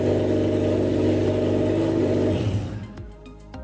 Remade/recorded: recorded